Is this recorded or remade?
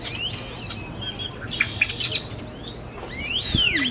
recorded